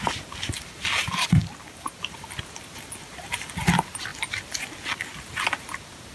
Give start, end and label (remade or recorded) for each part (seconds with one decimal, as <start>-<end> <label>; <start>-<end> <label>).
0.0-6.1 recorded